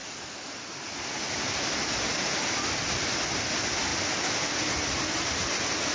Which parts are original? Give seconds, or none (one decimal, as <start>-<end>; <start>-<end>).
0.0-5.9